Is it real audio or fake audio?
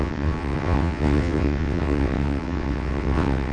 fake